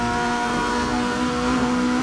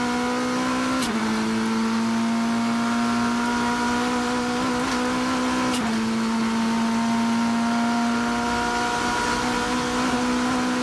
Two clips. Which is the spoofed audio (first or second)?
first